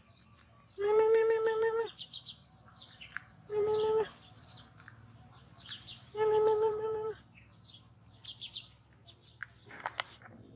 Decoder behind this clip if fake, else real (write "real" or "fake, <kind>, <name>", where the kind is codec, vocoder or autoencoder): fake, vocoder, BigVGAN v2